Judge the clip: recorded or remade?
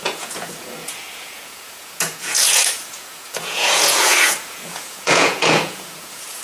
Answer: remade